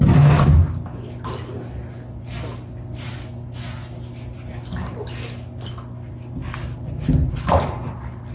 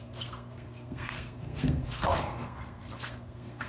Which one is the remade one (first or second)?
second